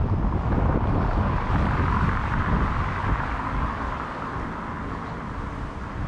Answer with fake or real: real